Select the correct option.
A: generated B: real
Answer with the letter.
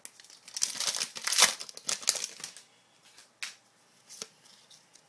B